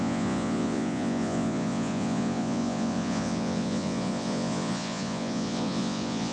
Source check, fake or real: fake